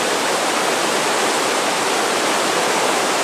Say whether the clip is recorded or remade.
remade